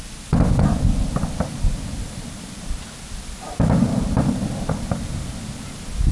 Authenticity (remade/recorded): recorded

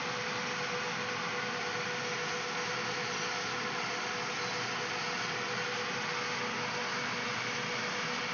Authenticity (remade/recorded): recorded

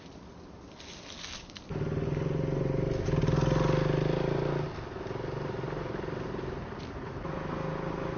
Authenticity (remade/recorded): recorded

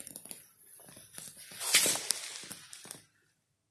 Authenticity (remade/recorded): recorded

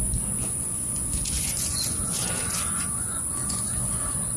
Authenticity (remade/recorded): remade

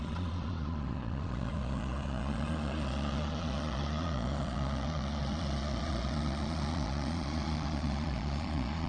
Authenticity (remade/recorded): remade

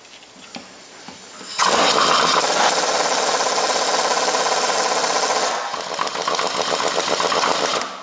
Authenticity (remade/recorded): recorded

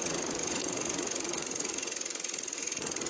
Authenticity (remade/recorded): remade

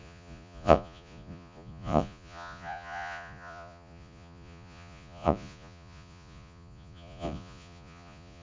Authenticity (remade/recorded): remade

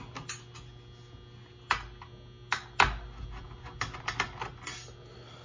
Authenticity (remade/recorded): recorded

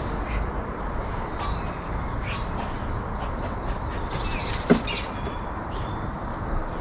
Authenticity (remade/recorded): recorded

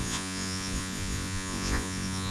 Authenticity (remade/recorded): remade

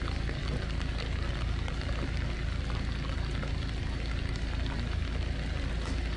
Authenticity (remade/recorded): recorded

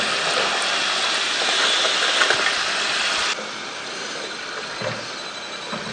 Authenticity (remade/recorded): recorded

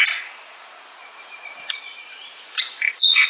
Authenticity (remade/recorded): remade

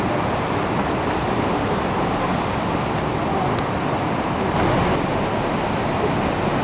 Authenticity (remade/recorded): recorded